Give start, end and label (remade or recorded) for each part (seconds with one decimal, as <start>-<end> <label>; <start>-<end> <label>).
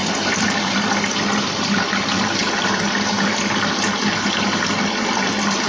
0.0-1.1 remade; 1.1-5.7 recorded